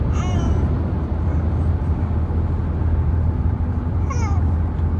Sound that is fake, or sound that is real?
real